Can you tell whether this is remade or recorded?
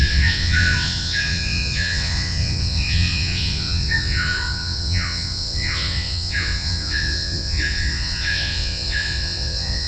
remade